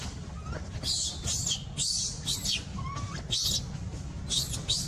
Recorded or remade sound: recorded